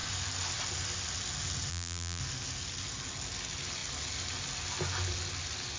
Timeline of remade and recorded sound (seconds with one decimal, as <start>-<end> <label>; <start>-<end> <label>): 0.0-1.7 recorded; 1.7-2.2 remade; 2.2-5.8 recorded